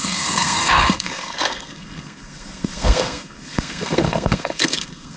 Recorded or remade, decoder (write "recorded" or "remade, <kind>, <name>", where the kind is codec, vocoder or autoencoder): remade, codec, SNAC